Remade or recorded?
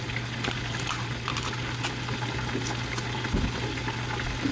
recorded